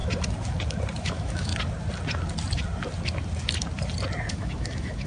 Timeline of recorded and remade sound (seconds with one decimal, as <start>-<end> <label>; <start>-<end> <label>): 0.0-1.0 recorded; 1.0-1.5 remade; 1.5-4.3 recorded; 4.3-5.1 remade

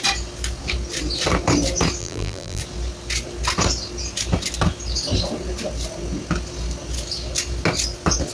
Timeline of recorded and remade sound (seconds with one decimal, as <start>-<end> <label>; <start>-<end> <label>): 0.0-2.0 recorded; 2.0-2.6 remade; 2.6-8.3 recorded

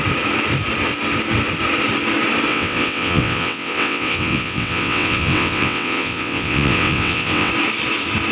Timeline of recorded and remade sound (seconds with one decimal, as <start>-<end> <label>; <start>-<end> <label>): 0.0-2.5 recorded; 2.5-7.5 remade; 7.5-8.3 recorded

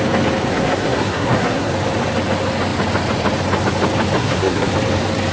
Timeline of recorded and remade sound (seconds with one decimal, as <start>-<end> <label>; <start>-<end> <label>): 0.0-0.5 recorded; 0.5-1.7 remade; 1.7-4.2 recorded; 4.2-4.7 remade; 4.7-5.3 recorded

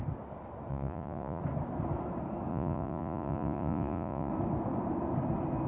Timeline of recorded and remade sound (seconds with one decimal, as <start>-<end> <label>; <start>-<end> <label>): 0.0-0.7 recorded; 0.7-1.4 remade; 1.4-2.5 recorded; 2.5-4.3 remade; 4.3-5.7 recorded

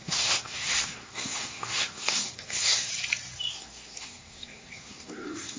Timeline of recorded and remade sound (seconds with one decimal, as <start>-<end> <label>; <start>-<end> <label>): 0.0-2.9 remade; 2.9-3.5 recorded; 3.5-5.6 remade